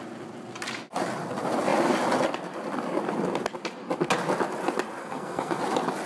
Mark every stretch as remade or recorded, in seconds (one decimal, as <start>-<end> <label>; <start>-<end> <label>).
0.0-5.0 recorded; 5.0-5.6 remade; 5.6-6.1 recorded